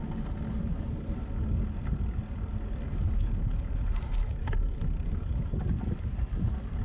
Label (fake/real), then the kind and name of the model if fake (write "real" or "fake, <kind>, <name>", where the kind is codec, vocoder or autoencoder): real